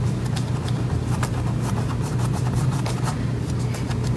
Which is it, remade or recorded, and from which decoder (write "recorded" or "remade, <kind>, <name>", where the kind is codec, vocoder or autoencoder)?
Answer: recorded